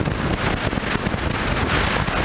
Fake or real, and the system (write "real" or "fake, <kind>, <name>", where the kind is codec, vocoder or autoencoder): real